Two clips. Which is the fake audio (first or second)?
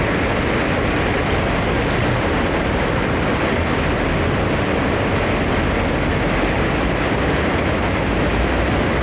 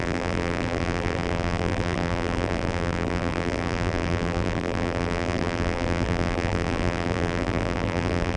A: second